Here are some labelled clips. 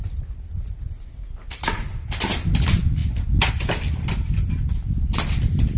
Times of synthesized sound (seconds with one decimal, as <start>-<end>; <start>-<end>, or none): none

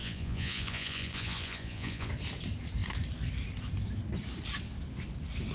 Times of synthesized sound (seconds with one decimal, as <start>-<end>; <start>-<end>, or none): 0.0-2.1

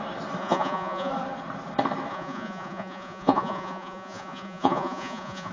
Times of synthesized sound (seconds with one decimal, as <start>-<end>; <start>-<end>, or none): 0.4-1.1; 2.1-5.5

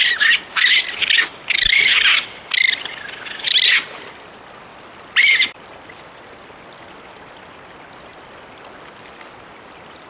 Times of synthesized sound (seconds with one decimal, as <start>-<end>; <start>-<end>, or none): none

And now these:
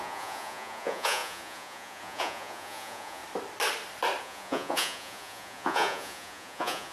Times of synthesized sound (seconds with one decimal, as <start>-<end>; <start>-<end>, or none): 0.0-3.2; 4.2-6.9

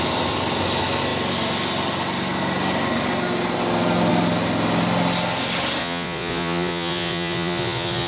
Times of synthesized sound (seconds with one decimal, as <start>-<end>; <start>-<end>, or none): 5.8-8.1

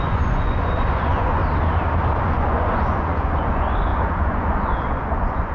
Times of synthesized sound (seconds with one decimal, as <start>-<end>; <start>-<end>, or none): 0.0-1.4; 2.2-5.5